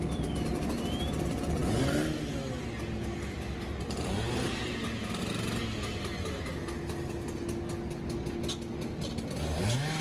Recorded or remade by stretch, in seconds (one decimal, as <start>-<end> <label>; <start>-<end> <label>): 0.0-10.0 recorded